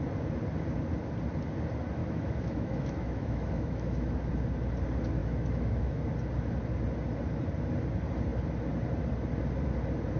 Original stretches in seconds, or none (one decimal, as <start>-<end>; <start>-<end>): 0.0-2.0; 4.3-5.2; 6.0-10.2